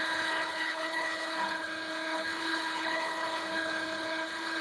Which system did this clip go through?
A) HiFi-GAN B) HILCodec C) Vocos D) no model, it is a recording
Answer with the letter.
B